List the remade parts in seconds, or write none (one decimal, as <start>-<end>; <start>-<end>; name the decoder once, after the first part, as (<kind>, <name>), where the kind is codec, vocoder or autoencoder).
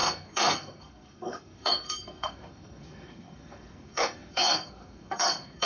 0.0-5.7 (codec, SNAC)